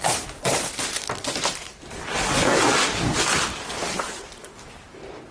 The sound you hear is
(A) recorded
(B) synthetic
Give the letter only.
B